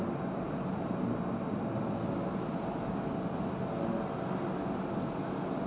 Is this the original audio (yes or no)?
yes